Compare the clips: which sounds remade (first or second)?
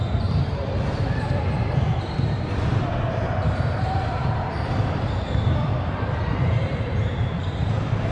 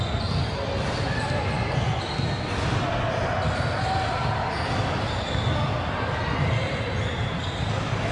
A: first